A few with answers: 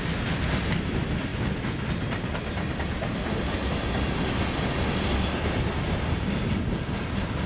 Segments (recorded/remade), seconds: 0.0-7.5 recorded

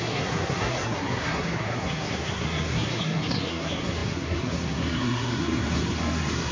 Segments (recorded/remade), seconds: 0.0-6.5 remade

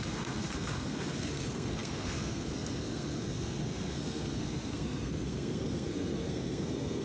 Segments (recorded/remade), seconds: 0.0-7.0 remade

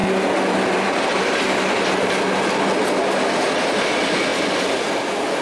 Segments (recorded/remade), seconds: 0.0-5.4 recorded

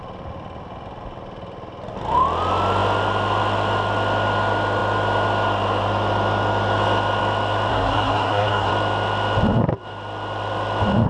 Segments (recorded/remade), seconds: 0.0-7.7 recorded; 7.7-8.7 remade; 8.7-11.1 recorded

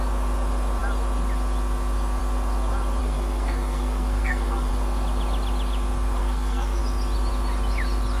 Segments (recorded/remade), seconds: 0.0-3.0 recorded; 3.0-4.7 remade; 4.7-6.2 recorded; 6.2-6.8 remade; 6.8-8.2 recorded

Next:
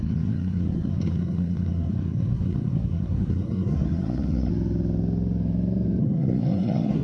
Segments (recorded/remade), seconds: 0.0-4.5 remade; 4.5-6.0 recorded; 6.0-7.0 remade

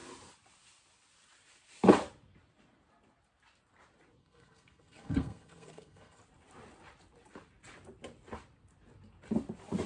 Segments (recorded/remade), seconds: 0.0-4.2 recorded; 4.2-6.2 remade; 6.2-9.9 recorded